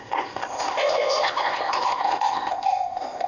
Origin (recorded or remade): remade